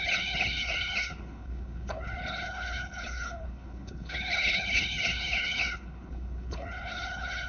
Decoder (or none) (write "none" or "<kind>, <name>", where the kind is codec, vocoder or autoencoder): codec, HILCodec